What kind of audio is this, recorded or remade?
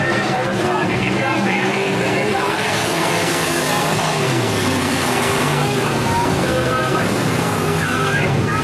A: remade